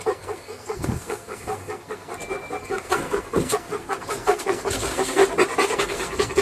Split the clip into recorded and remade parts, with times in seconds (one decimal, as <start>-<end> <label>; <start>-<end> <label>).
0.0-2.1 remade; 2.1-2.6 recorded; 2.6-5.2 remade; 5.2-5.7 recorded; 5.7-6.4 remade